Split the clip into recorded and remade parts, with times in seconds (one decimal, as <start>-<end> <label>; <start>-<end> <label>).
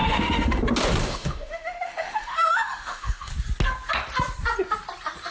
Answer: 0.0-0.6 remade; 0.6-1.0 recorded; 1.0-3.3 remade; 3.3-5.3 recorded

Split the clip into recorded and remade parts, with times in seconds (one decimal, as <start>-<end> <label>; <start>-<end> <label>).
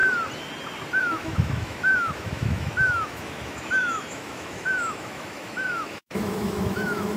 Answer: 0.0-1.0 recorded; 1.0-7.2 remade